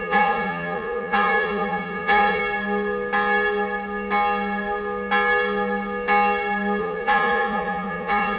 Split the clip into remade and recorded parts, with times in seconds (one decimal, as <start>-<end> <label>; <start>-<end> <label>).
0.0-2.4 remade; 2.4-6.8 recorded; 6.8-8.4 remade